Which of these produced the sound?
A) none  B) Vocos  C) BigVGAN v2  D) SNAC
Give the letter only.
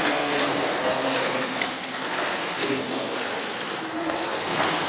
D